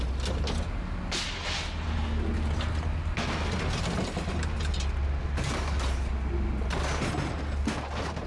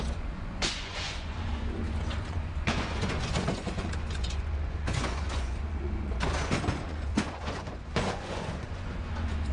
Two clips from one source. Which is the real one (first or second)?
first